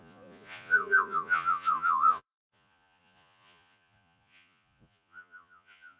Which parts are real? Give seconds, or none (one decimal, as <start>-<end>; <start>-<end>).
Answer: none